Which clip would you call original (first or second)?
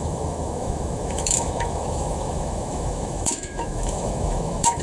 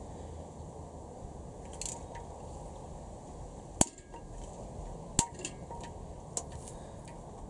second